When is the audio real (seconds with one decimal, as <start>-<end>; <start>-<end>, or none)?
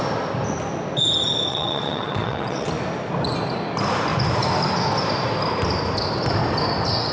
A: 0.0-1.5; 2.7-7.1